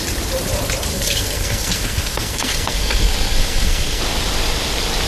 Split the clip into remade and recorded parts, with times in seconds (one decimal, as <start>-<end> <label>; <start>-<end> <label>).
0.0-0.9 recorded; 0.9-4.0 remade; 4.0-5.1 recorded